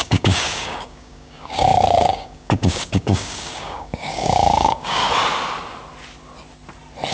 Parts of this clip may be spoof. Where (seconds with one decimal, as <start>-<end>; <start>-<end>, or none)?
0.0-5.0